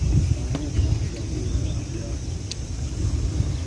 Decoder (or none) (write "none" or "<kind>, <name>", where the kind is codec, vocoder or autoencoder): none